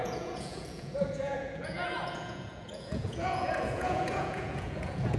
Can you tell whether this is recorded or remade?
remade